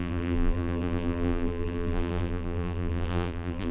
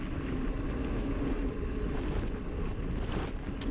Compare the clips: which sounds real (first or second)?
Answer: second